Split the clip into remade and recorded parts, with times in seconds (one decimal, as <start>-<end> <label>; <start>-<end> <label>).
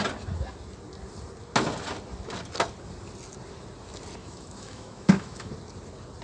0.0-4.2 recorded; 4.2-5.5 remade; 5.5-6.2 recorded